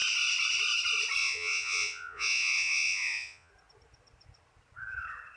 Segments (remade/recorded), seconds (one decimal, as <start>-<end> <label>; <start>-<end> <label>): 0.0-1.2 recorded; 1.2-3.5 remade; 3.5-5.4 recorded